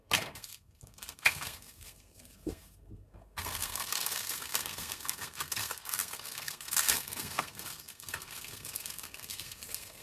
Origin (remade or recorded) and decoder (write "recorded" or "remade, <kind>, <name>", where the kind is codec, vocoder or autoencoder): remade, codec, SNAC